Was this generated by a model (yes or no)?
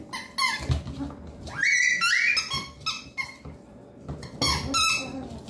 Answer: no